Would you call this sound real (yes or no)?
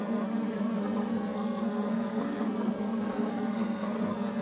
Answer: no